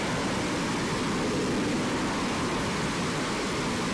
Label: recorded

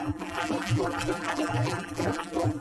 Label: remade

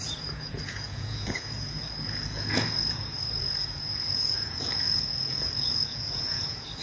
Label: remade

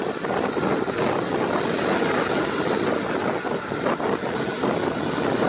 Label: recorded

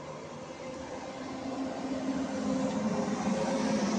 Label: recorded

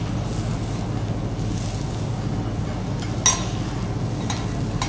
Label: recorded